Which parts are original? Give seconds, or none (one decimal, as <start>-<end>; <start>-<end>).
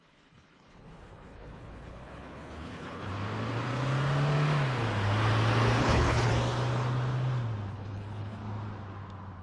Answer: 3.1-5.8; 6.3-7.7; 8.4-9.4